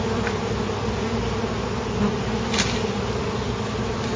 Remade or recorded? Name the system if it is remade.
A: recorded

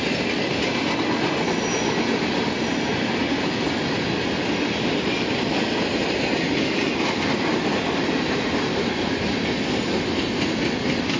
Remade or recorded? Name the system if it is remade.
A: recorded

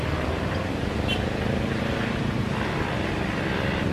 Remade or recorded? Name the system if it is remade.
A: recorded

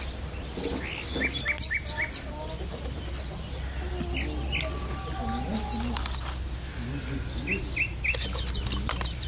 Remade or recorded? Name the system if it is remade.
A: recorded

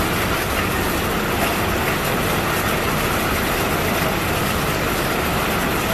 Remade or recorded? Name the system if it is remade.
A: recorded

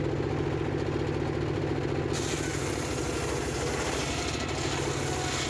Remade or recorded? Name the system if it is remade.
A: recorded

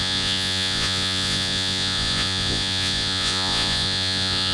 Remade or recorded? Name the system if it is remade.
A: remade, vocoder, Vocos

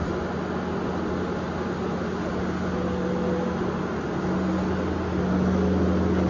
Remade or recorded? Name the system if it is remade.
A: recorded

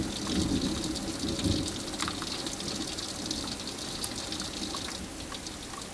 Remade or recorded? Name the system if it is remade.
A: recorded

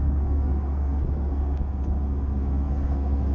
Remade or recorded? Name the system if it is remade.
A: remade, codec, SNAC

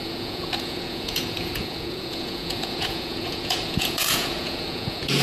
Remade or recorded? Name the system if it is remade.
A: remade, vocoder, Vocos